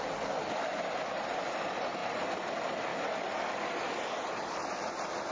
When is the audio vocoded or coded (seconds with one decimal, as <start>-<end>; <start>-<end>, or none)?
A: 0.0-2.0; 2.5-2.9